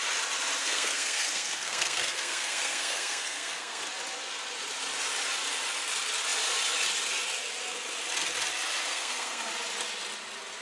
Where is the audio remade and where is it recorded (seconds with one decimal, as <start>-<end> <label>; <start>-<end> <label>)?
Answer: 0.0-0.6 recorded; 0.6-3.8 remade; 3.8-8.9 recorded; 8.9-9.5 remade; 9.5-10.6 recorded